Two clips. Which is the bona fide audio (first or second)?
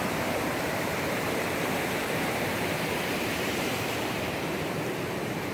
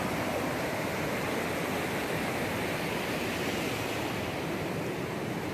second